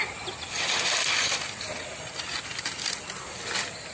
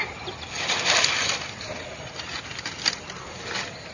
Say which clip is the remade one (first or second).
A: second